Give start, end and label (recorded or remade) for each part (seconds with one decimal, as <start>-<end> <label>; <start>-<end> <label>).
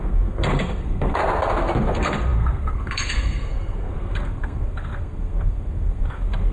0.0-1.2 remade; 1.2-1.8 recorded; 1.8-6.5 remade